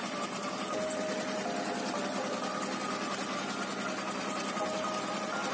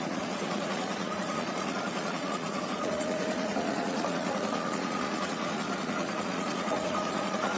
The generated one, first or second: second